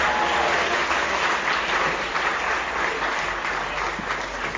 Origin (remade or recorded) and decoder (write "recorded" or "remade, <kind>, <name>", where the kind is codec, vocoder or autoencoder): recorded